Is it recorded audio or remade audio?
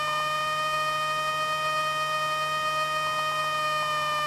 recorded